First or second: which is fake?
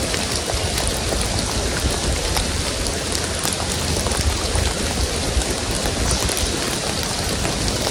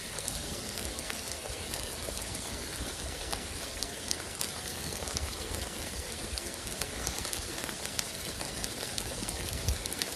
second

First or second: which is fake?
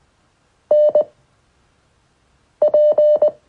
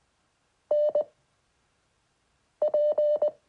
second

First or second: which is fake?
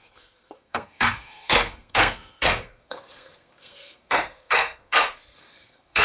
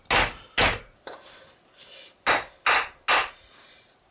first